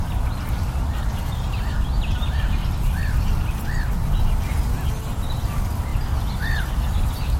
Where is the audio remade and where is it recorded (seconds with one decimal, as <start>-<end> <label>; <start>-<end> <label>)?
0.0-7.4 recorded